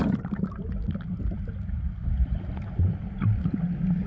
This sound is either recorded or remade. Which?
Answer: recorded